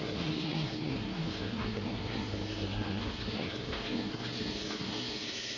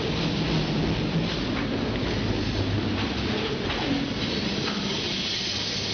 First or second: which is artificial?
first